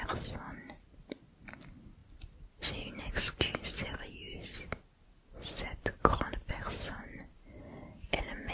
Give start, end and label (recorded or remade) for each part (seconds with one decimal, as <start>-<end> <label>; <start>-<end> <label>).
0.0-8.5 recorded